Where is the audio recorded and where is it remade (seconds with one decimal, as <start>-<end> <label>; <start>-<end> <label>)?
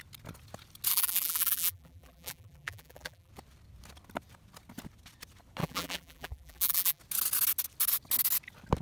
0.0-0.9 recorded; 0.9-3.3 remade; 3.3-5.6 recorded; 5.6-7.0 remade; 7.0-8.8 recorded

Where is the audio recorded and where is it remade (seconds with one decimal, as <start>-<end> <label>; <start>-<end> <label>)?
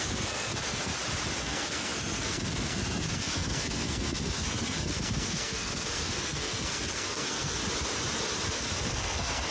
0.0-0.9 remade; 0.9-1.4 recorded; 1.4-7.6 remade; 7.6-8.5 recorded; 8.5-9.5 remade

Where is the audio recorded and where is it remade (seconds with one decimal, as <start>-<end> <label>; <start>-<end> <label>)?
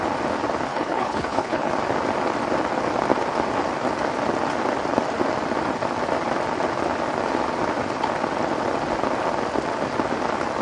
0.0-0.7 recorded; 0.7-1.7 remade; 1.7-10.6 recorded